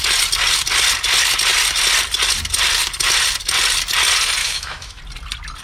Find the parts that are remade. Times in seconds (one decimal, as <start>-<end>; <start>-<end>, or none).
4.4-5.0